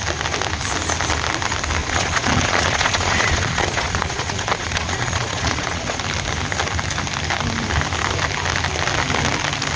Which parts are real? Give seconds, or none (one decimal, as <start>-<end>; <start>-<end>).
0.0-1.8; 6.0-9.8